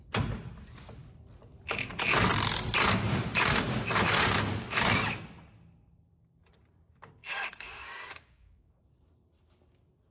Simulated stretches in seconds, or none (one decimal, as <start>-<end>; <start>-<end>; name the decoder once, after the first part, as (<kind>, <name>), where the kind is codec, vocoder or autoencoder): 7.2-8.7 (codec, DAC)